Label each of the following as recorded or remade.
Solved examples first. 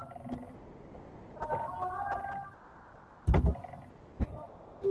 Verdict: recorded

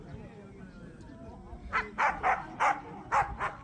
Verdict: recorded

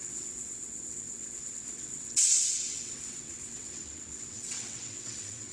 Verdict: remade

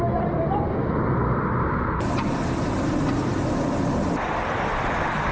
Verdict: recorded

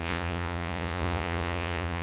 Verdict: remade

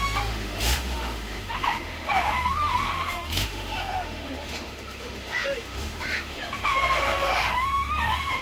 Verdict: remade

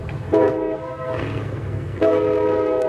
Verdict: remade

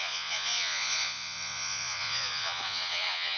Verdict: remade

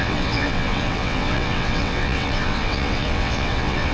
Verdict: remade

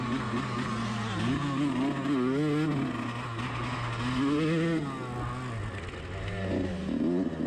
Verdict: recorded